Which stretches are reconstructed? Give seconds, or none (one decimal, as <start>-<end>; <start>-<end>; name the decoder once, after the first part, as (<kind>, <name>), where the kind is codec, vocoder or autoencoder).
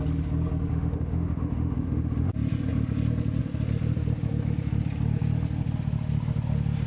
0.7-2.3 (autoencoder, DAC-VAE)